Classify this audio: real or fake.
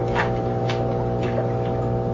real